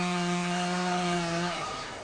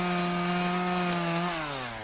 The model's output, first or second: first